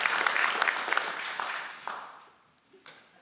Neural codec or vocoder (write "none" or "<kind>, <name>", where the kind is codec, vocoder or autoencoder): none